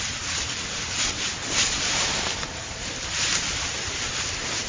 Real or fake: real